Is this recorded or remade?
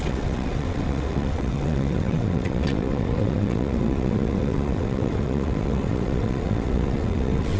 remade